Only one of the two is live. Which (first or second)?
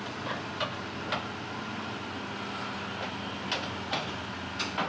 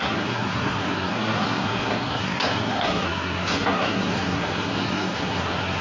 first